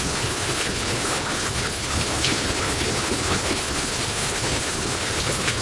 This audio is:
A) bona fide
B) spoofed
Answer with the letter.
B